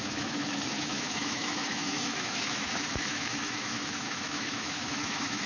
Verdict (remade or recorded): remade